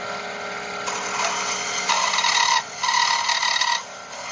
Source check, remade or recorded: recorded